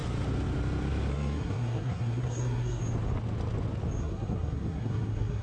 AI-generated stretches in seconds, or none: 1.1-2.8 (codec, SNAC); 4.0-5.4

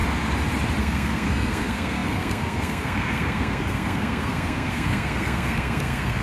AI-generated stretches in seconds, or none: 0.8-6.2 (codec, SNAC)